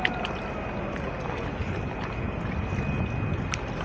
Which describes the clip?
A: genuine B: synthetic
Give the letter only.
A